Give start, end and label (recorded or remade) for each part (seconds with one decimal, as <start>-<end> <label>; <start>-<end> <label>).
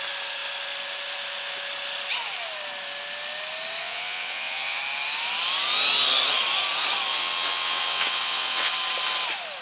0.0-3.8 recorded; 3.8-4.8 remade; 4.8-7.1 recorded; 7.1-8.7 remade; 8.7-9.6 recorded